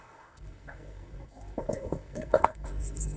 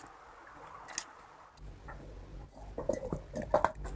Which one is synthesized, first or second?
first